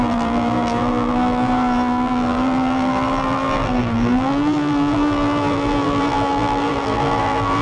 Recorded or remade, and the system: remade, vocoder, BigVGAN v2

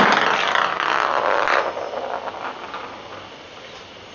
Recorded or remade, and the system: recorded